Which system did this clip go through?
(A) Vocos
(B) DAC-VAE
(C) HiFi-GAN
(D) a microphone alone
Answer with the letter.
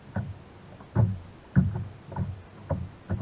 D